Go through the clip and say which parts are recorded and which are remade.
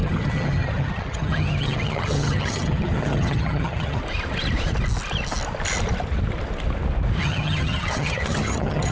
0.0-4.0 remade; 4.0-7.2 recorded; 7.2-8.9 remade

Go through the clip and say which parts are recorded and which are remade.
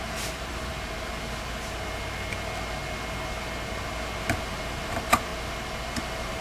0.0-0.7 remade; 0.7-4.5 recorded; 4.5-5.3 remade; 5.3-6.0 recorded; 6.0-6.4 remade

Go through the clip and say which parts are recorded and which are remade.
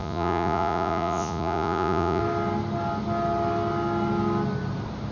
0.0-2.2 remade; 2.2-5.1 recorded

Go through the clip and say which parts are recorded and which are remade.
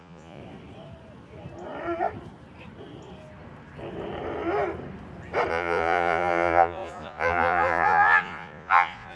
0.0-0.4 remade; 0.4-5.5 recorded; 5.5-9.2 remade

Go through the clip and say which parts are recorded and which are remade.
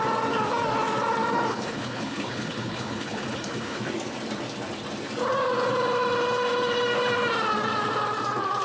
0.0-1.5 recorded; 1.5-3.8 remade; 3.8-8.6 recorded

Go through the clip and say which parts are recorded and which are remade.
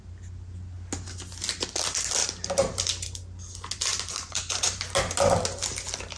0.0-2.2 recorded; 2.2-2.8 remade; 2.8-3.9 recorded; 3.9-4.8 remade; 4.8-6.2 recorded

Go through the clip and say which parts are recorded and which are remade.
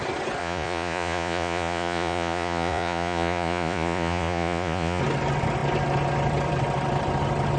0.0-0.4 recorded; 0.4-5.0 remade; 5.0-7.6 recorded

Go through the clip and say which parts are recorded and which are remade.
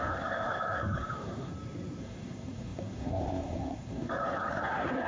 0.0-1.5 remade; 1.5-2.0 recorded; 2.0-5.1 remade